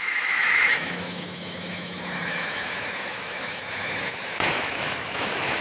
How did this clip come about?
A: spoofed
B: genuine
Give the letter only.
A